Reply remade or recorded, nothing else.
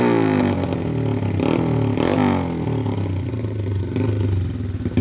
recorded